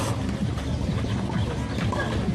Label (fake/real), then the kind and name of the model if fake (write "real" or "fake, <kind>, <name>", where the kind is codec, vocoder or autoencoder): fake, vocoder, BigVGAN v2